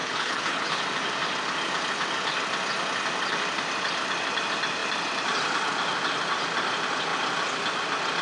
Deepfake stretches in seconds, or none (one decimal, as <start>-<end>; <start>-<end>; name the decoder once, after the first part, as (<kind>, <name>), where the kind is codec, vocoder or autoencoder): 0.0-0.8 (codec, HILCodec)